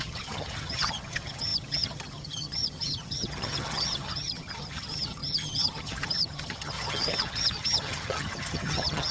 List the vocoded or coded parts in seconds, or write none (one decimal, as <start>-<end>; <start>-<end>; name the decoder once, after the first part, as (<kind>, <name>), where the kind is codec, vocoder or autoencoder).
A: 0.0-9.1 (vocoder, HiFi-GAN)